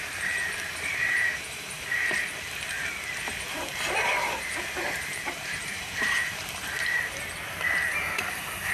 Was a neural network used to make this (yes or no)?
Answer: yes